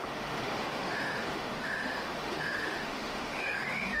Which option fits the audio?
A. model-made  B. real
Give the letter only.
A